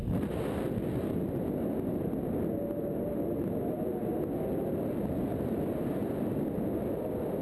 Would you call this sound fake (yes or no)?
no